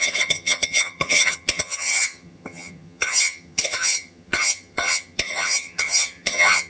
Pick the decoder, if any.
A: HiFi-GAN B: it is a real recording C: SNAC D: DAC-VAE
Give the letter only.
A